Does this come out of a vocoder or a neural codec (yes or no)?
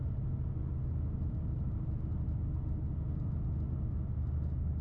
no